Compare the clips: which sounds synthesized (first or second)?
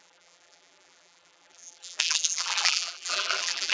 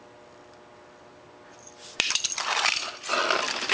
first